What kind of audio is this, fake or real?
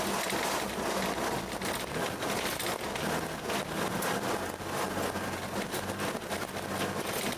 real